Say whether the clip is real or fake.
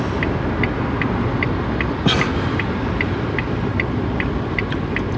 real